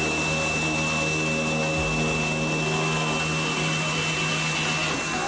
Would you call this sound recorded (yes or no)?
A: yes